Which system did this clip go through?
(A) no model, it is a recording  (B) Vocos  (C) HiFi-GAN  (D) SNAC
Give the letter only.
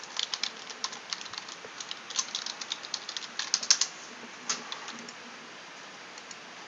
A